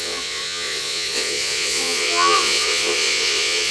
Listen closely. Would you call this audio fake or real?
fake